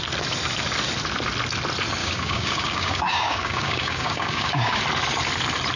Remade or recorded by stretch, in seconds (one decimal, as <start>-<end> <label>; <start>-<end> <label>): 0.0-2.0 recorded; 2.0-4.8 remade; 4.8-5.8 recorded